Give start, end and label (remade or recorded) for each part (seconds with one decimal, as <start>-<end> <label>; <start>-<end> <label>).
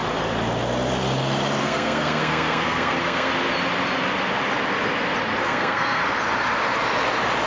0.0-1.6 recorded; 1.6-3.3 remade; 3.3-5.4 recorded; 5.4-6.0 remade; 6.0-7.5 recorded